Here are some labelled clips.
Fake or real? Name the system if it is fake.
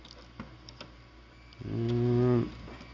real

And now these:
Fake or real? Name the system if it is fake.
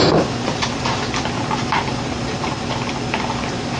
real